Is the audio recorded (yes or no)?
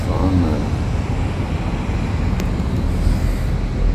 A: yes